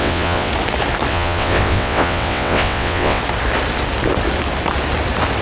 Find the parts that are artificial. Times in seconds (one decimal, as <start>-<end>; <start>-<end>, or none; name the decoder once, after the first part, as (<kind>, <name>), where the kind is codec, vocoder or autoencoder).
0.0-0.5 (vocoder, WaveNeXt); 1.1-3.2